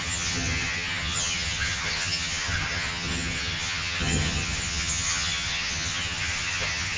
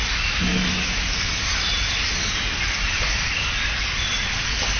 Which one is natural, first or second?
second